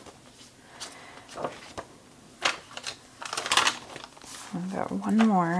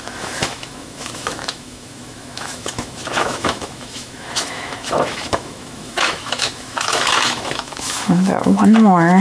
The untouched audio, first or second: first